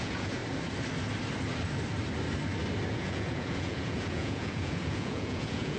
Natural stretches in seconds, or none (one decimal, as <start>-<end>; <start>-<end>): 0.4-2.9